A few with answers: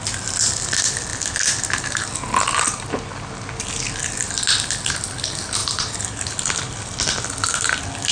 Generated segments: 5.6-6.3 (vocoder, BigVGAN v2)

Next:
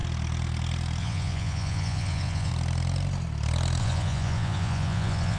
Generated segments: 1.0-2.5 (vocoder, Vocos); 3.8-5.4

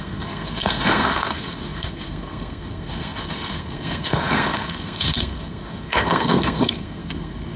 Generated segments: 0.0-7.6 (codec, SNAC)